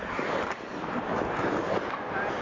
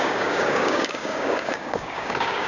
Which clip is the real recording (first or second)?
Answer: first